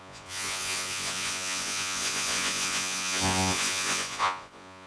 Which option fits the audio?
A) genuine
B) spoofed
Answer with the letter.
B